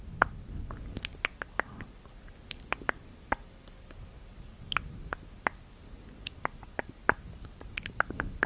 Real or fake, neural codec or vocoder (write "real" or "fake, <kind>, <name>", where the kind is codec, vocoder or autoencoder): real